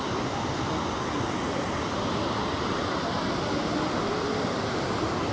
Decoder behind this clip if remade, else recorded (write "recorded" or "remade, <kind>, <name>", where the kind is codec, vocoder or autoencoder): recorded